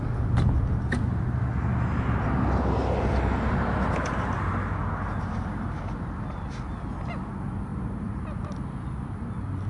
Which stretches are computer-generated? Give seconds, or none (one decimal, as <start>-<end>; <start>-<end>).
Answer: none